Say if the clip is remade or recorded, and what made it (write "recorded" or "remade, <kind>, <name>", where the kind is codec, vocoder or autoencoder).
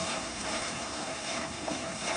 remade, codec, SNAC